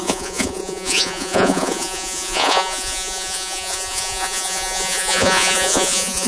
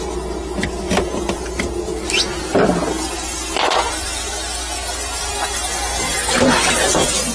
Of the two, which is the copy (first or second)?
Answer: first